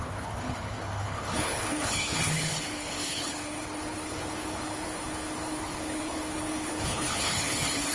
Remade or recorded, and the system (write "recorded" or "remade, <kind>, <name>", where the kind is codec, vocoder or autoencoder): remade, codec, HILCodec